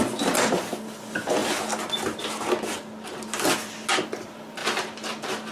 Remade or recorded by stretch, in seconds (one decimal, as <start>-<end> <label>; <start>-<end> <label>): 0.0-5.5 recorded